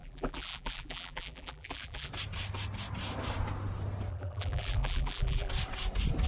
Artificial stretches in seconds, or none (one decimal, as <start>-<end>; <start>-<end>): 0.0-2.1; 4.1-5.5